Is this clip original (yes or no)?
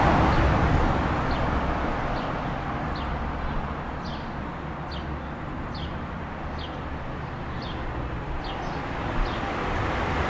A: yes